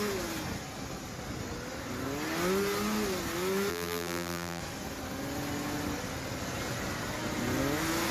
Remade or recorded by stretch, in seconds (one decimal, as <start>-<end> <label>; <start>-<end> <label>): 0.0-3.7 recorded; 3.7-4.6 remade; 4.6-8.1 recorded